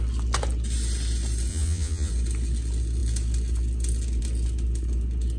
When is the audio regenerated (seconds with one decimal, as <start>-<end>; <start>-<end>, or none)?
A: 1.5-2.1